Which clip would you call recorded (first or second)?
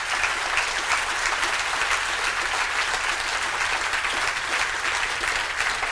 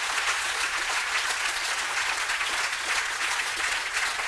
first